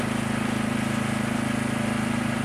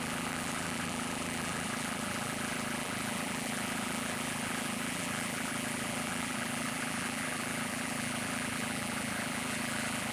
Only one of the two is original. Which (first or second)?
first